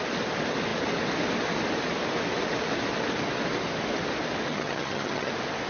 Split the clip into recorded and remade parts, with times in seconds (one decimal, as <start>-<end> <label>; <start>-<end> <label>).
0.0-4.5 recorded; 4.5-5.3 remade; 5.3-5.7 recorded